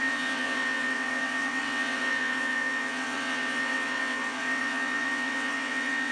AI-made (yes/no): yes